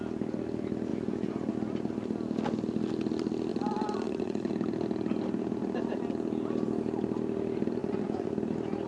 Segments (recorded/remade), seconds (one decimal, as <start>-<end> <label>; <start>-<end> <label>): 0.0-0.9 recorded; 0.9-1.5 remade; 1.5-3.5 recorded; 3.5-4.5 remade; 4.5-7.8 recorded; 7.8-8.3 remade; 8.3-8.9 recorded